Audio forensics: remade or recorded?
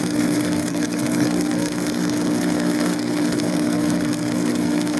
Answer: remade